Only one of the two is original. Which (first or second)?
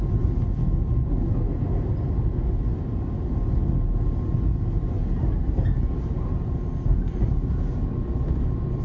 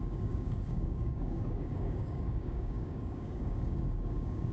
first